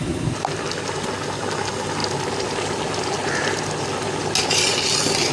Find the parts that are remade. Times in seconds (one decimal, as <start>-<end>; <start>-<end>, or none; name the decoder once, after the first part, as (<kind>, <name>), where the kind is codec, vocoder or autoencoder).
none